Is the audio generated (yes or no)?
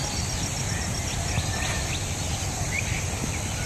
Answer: no